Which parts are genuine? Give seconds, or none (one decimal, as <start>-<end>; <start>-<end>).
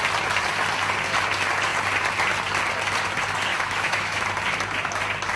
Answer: 0.0-3.5; 4.2-5.4